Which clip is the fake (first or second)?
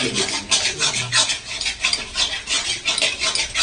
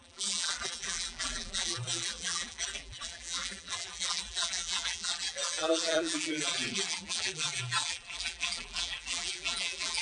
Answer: second